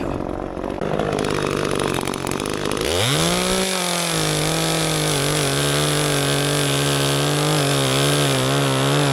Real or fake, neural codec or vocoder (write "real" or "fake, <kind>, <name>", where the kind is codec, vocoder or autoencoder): real